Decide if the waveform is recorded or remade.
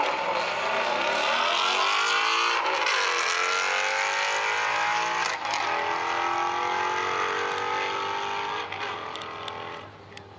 recorded